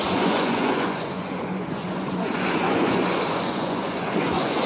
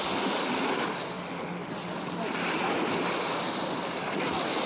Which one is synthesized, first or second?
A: first